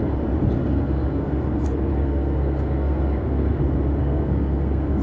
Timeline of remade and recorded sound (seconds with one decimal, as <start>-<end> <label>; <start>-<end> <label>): 0.0-0.6 recorded; 0.6-3.6 remade; 3.6-4.0 recorded; 4.0-5.0 remade

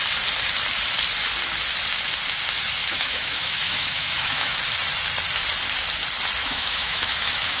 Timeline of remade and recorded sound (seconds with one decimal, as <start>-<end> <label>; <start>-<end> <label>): 0.0-2.8 recorded; 2.8-4.6 remade; 4.6-6.4 recorded; 6.4-7.6 remade

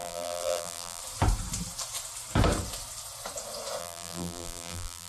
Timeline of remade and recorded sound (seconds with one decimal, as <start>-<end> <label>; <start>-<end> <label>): 0.0-1.0 remade; 1.0-3.8 recorded; 3.8-5.1 remade